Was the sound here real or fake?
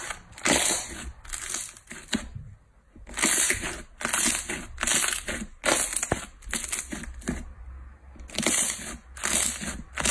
real